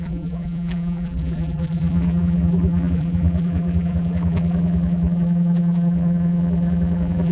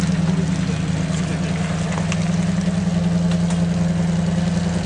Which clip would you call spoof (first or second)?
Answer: first